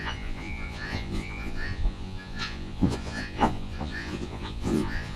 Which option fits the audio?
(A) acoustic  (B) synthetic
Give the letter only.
B